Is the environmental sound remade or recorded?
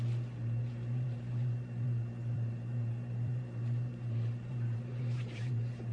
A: remade